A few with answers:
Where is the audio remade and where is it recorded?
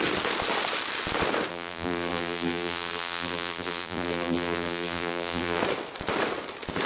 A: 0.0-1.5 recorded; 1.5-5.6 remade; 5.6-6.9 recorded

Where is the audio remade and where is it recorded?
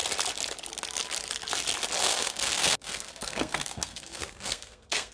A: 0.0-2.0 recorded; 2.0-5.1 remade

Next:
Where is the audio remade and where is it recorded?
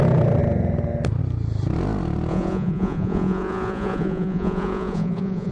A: 0.0-2.3 recorded; 2.3-5.5 remade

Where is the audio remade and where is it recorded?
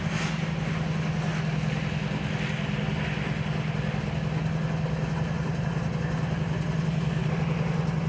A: 0.0-8.1 recorded